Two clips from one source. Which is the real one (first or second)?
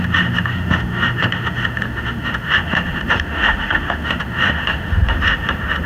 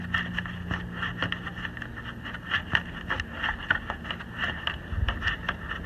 second